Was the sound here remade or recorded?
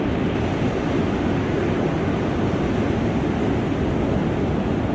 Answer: recorded